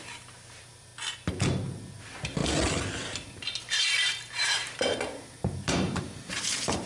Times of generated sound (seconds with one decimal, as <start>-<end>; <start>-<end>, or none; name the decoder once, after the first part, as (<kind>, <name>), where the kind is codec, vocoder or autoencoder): 0.0-0.9 (vocoder, BigVGAN v2); 2.0-2.4; 3.6-4.6; 5.1-6.9